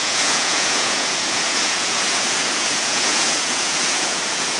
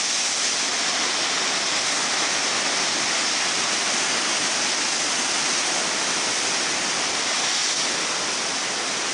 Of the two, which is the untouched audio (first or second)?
second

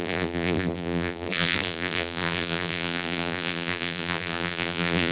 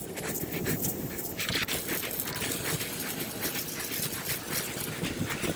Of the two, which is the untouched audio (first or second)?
second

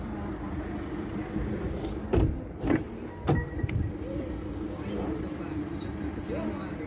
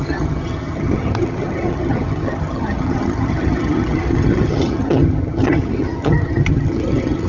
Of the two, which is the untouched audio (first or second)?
first